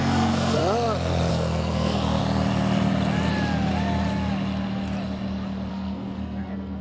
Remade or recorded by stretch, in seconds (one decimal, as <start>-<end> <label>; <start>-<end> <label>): 0.0-0.6 remade; 0.6-1.3 recorded; 1.3-2.2 remade; 2.2-5.7 recorded; 5.7-6.8 remade